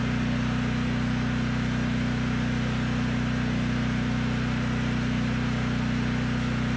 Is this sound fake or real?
real